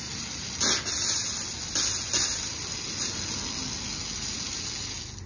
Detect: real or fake real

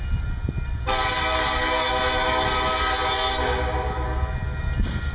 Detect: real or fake real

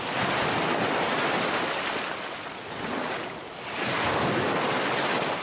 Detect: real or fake real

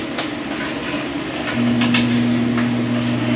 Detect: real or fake real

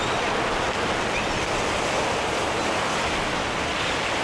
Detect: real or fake real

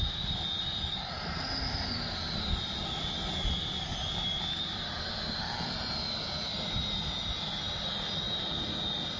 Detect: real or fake fake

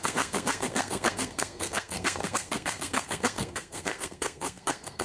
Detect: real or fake fake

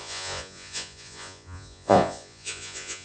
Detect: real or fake fake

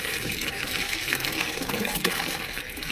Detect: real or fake fake